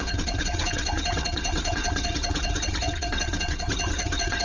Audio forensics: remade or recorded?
remade